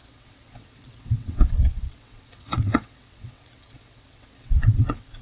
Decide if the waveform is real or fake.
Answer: fake